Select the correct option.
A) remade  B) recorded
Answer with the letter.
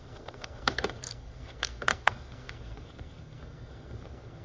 A